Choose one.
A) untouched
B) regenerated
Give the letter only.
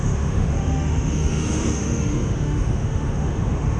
B